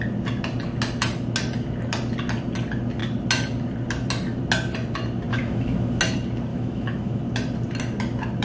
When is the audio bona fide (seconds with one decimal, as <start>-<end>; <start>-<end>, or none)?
0.0-5.3; 6.0-6.5; 7.2-8.4